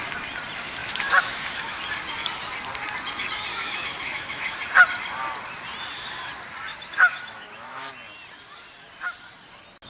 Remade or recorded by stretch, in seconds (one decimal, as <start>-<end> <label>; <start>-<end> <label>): 0.0-0.8 recorded; 0.8-1.8 remade; 1.8-3.5 recorded; 3.5-4.6 remade; 4.6-6.7 recorded; 6.7-7.9 remade; 7.9-9.9 recorded